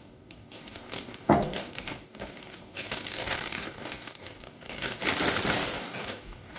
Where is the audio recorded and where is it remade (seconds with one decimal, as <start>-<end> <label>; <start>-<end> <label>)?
0.0-5.0 remade; 5.0-5.8 recorded; 5.8-6.6 remade